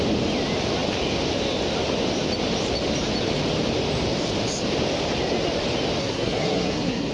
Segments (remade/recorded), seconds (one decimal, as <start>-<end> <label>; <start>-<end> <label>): 0.0-6.0 recorded; 6.0-7.1 remade